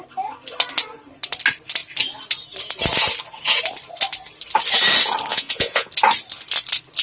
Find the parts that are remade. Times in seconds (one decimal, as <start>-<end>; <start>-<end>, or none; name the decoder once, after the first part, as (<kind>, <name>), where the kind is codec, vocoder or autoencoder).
5.3-5.9 (vocoder, Vocos)